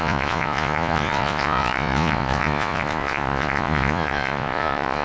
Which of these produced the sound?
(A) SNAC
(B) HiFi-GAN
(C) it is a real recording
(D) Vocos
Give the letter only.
D